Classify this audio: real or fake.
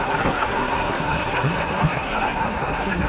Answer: fake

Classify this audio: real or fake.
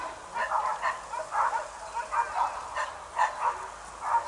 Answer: real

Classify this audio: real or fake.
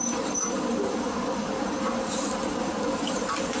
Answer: real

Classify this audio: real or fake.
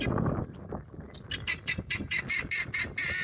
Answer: real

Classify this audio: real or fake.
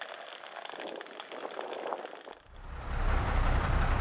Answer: real